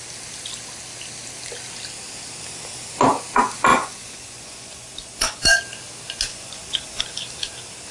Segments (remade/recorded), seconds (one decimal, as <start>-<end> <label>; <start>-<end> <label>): 0.0-3.7 recorded; 3.7-5.6 remade; 5.6-6.3 recorded; 6.3-7.0 remade; 7.0-7.9 recorded